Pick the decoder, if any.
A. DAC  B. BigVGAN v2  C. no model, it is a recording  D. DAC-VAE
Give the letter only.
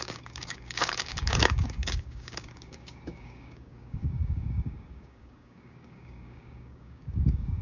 A